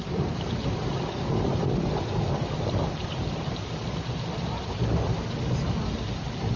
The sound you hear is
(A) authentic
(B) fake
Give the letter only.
A